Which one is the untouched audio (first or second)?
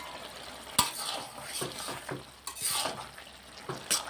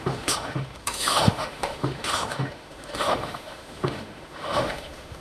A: first